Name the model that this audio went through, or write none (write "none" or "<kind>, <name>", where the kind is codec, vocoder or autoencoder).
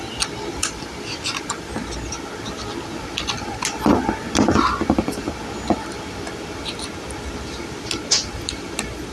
none